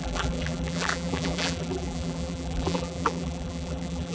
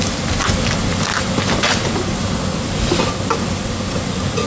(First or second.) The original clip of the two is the second